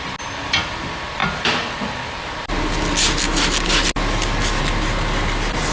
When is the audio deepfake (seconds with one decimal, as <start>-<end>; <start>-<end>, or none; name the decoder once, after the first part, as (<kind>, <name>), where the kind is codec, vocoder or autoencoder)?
none